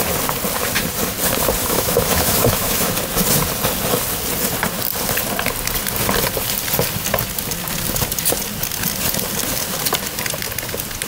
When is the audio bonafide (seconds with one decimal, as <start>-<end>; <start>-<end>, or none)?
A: 0.0-1.6; 2.9-11.1